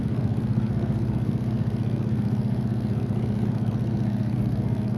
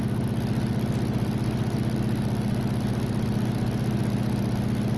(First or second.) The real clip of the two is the second